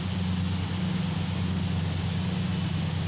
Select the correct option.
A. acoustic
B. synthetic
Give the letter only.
A